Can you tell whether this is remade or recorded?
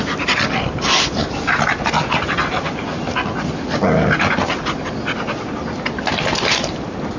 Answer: recorded